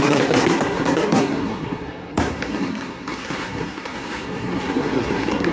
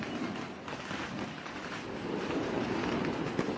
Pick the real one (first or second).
second